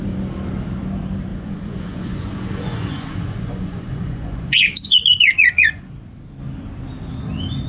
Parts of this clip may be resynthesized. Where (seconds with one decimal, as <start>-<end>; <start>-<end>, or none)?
1.3-5.9